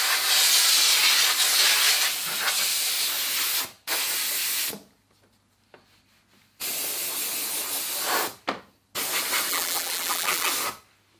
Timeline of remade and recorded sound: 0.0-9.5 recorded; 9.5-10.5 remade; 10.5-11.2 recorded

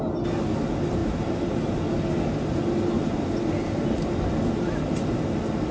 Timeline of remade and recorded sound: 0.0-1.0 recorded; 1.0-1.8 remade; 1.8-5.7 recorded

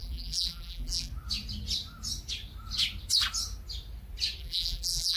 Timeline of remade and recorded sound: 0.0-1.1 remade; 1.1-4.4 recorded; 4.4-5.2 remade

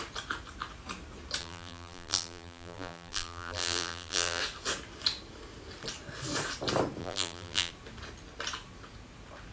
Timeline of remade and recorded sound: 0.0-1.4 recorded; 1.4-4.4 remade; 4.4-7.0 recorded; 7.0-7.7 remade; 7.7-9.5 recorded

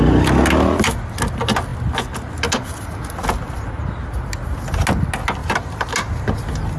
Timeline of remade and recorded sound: 0.0-5.4 recorded; 5.4-5.9 remade; 5.9-6.8 recorded